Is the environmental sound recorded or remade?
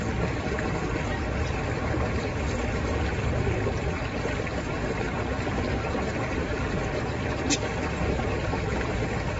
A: recorded